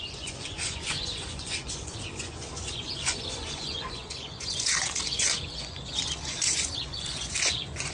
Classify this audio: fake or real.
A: fake